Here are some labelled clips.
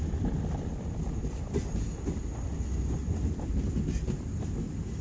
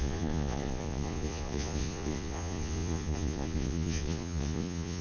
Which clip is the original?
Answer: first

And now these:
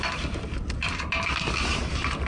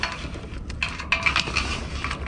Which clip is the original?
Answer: second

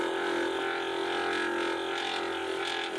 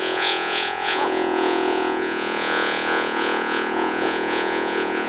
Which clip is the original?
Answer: first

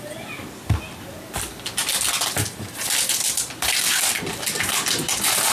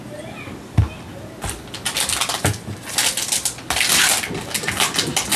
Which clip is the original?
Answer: second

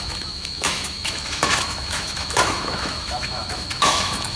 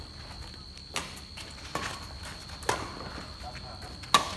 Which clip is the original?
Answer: second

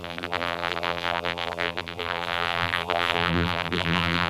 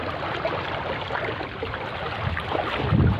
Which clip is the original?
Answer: second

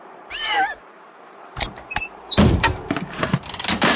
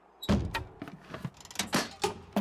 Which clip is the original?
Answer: second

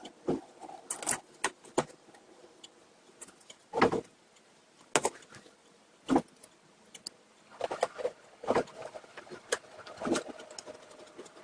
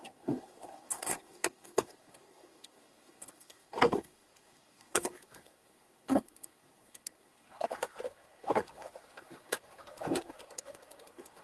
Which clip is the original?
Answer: first